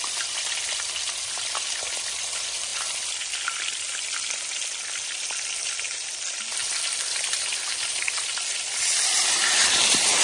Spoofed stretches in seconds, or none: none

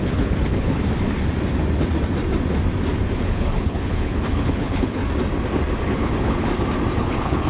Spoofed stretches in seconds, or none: 0.0-0.8; 3.2-5.0; 6.0-6.5; 7.0-7.5